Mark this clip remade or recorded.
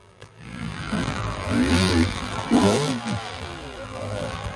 remade